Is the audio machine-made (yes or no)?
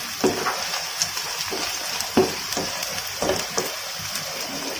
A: no